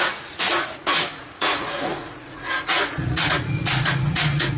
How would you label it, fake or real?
fake